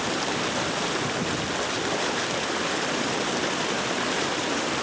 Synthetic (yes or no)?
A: no